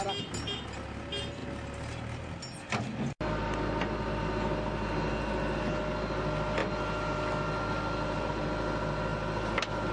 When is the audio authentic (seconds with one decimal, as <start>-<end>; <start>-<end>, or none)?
0.0-9.9